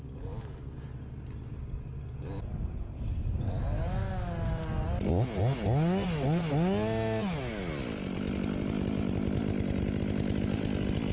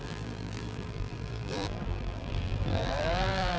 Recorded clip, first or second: first